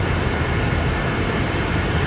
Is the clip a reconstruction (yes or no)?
no